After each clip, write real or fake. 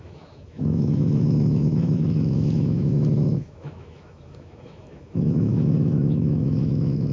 fake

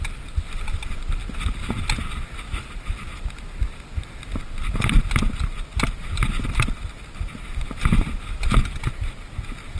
real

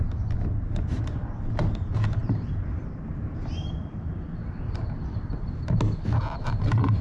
real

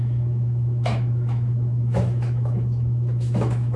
fake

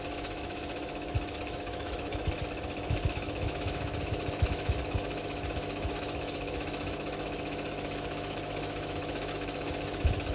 fake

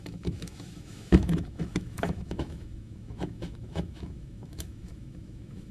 fake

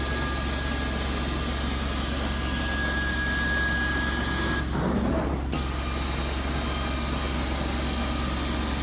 real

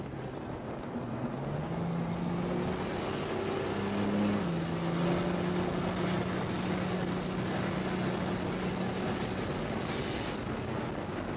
real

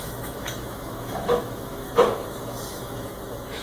fake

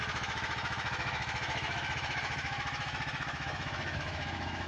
fake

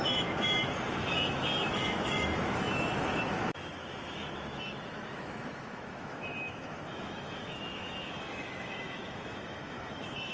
fake